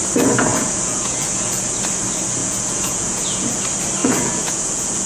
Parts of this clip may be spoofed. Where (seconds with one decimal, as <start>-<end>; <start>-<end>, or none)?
0.5-1.6; 2.4-3.6; 4.0-5.1